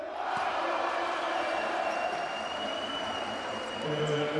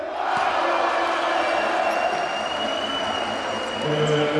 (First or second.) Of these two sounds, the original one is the second